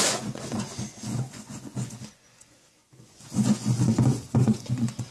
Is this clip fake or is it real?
fake